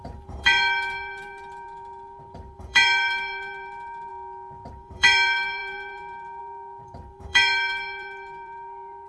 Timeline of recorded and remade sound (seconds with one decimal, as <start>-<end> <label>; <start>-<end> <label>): 0.0-4.1 remade; 4.1-4.7 recorded; 4.7-9.1 remade